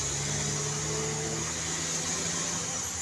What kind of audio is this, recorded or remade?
recorded